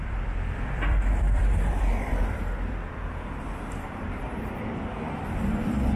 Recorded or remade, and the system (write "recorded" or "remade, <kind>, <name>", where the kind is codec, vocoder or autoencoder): remade, vocoder, BigVGAN v2